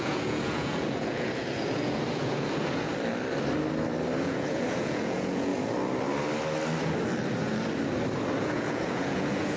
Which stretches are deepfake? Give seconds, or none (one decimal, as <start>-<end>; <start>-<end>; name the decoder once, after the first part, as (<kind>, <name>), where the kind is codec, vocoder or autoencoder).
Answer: 0.0-2.9 (vocoder, Vocos); 4.2-5.5; 8.4-9.6